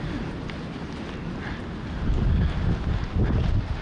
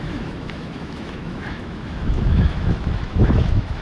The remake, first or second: second